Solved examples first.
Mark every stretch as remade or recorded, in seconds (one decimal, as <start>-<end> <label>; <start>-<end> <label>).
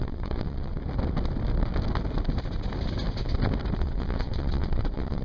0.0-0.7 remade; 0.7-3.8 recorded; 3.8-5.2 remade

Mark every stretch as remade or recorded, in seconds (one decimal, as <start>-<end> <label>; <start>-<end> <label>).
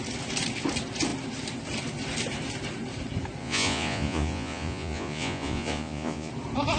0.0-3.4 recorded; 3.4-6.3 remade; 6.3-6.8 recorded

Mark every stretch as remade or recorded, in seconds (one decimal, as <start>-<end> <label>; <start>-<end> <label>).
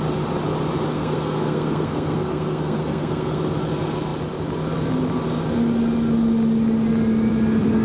0.0-0.9 recorded; 0.9-3.4 remade; 3.4-7.8 recorded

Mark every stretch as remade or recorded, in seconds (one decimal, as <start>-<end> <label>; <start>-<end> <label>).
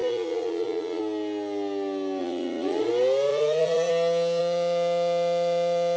0.0-1.0 remade; 1.0-2.2 recorded; 2.2-2.9 remade; 2.9-3.3 recorded; 3.3-3.9 remade; 3.9-4.4 recorded; 4.4-6.0 remade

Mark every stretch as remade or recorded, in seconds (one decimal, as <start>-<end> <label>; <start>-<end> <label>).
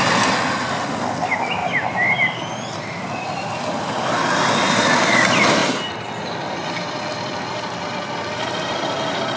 0.0-9.4 recorded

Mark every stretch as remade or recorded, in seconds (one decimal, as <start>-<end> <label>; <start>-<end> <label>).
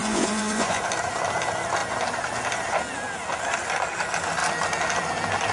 0.0-0.8 remade; 0.8-5.5 recorded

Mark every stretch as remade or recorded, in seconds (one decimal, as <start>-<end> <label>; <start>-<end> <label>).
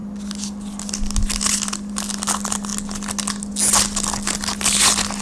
0.0-5.2 recorded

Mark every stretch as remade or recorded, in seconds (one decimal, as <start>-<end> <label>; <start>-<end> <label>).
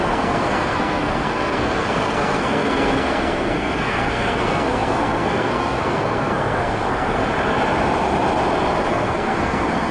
0.0-7.2 remade; 7.2-8.9 recorded; 8.9-9.9 remade